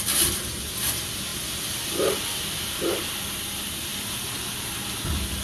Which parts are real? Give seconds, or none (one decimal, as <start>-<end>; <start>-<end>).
0.0-5.4